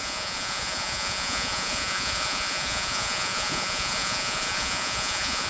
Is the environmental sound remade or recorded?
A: remade